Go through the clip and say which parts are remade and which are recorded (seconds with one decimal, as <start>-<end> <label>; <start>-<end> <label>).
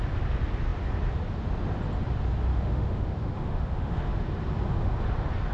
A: 0.0-2.5 recorded; 2.5-4.1 remade; 4.1-5.5 recorded